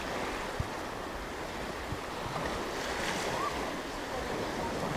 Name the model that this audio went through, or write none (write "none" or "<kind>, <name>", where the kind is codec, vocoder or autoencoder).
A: none